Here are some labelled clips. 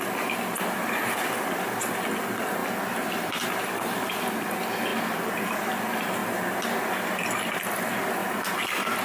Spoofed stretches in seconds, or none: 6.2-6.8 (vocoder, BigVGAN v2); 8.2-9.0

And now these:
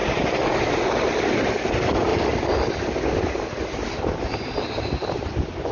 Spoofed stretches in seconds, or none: 0.0-1.5 (vocoder, BigVGAN v2); 2.1-5.3

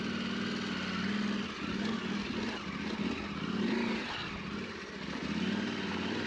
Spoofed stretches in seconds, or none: none

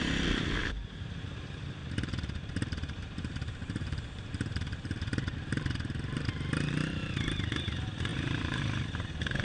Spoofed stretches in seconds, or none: 0.6-1.4 (vocoder, BigVGAN v2); 1.8-6.2; 8.1-8.6

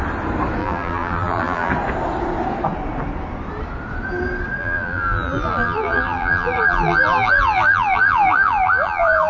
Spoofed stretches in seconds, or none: 0.6-1.7 (vocoder, BigVGAN v2); 4.6-9.3

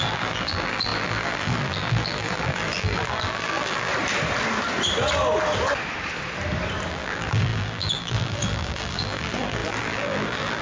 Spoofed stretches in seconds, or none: 0.0-3.9 (vocoder, BigVGAN v2); 6.9-10.6

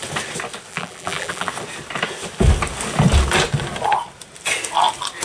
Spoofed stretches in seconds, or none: 0.7-1.5 (vocoder, BigVGAN v2)

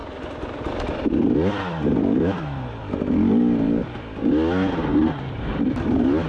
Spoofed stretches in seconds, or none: 0.0-4.2 (vocoder, BigVGAN v2); 4.9-6.3